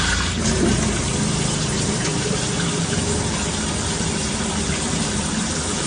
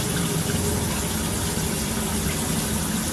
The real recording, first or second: second